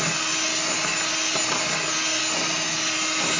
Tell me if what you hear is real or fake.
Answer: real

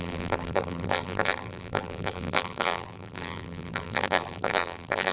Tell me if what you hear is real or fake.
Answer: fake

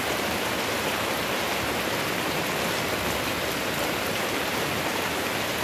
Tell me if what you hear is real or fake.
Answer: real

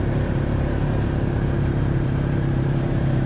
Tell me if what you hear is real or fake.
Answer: fake